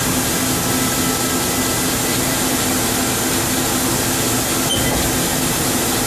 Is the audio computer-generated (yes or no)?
no